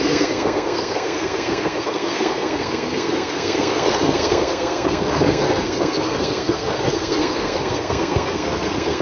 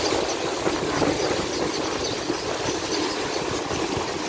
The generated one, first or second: first